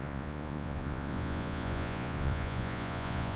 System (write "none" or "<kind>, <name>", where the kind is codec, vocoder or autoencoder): vocoder, Vocos